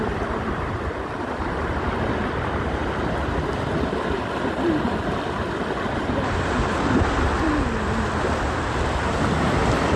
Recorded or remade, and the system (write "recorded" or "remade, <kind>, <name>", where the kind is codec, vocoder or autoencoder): recorded